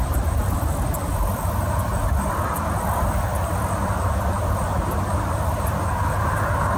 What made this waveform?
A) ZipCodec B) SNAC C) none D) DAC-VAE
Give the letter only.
C